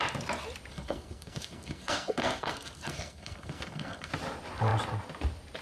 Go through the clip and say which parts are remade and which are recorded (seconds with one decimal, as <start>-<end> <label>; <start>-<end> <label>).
0.0-0.7 recorded; 0.7-4.1 remade; 4.1-5.6 recorded